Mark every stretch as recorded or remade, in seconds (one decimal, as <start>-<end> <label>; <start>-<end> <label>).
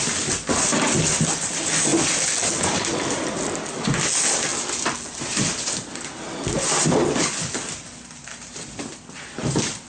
0.0-9.9 recorded